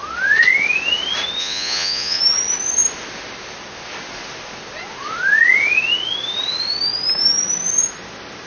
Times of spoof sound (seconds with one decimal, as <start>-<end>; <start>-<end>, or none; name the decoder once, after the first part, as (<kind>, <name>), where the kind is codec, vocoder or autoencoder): 1.4-2.2 (vocoder, Vocos)